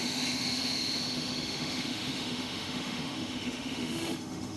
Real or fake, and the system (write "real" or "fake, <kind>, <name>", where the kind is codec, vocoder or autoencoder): fake, autoencoder, DAC-VAE